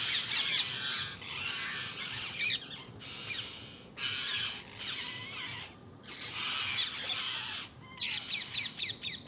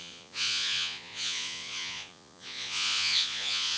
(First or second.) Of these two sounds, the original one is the first